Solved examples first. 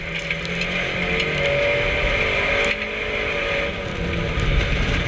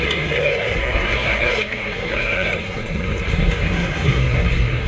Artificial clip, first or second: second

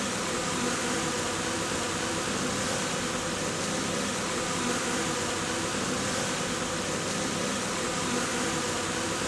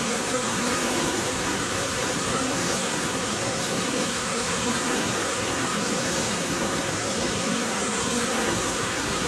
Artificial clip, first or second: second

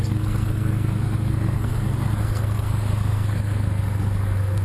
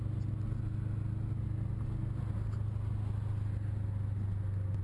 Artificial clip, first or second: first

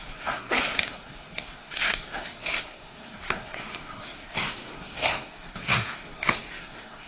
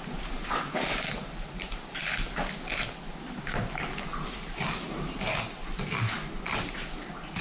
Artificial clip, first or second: first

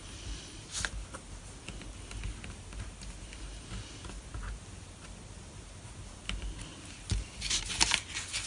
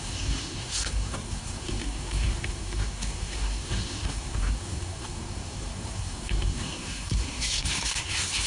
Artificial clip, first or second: second